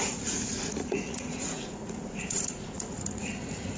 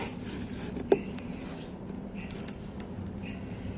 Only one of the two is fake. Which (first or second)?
first